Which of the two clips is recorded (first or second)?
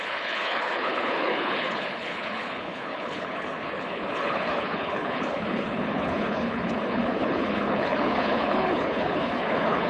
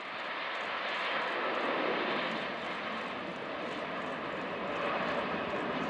second